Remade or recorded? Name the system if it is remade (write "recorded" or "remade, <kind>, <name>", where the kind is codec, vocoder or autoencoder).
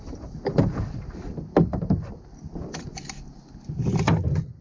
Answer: recorded